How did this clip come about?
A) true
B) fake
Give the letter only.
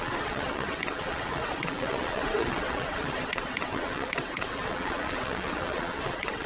B